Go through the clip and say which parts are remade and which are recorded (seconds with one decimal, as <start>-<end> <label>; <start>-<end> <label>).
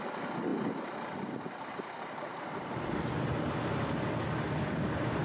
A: 0.0-0.5 recorded; 0.5-3.6 remade; 3.6-5.2 recorded